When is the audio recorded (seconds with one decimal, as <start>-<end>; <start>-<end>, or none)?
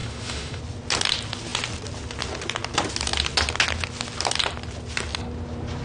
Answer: 0.6-5.8